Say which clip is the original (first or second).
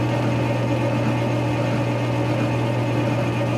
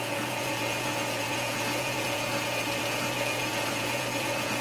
first